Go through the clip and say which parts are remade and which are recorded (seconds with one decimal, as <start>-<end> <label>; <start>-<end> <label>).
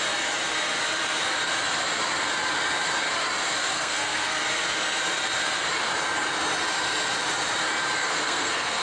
0.0-3.7 recorded; 3.7-4.4 remade; 4.4-8.0 recorded; 8.0-8.8 remade